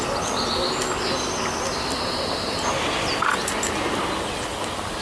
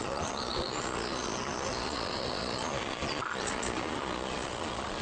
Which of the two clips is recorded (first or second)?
first